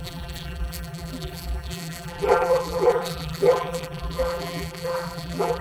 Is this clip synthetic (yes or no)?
yes